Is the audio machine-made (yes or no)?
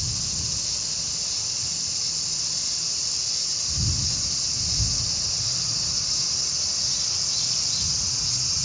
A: no